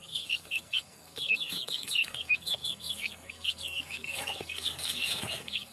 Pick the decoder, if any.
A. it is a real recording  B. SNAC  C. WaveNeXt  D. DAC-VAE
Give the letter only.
B